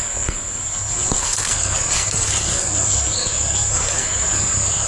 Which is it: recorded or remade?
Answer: remade